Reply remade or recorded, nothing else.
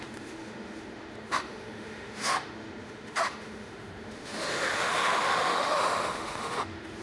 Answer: remade